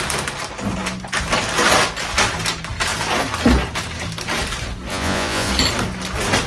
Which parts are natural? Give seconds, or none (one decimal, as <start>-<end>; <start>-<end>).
0.0-4.9; 5.5-6.5